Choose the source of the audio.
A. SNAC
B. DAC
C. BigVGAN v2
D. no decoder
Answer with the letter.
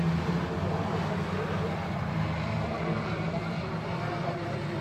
D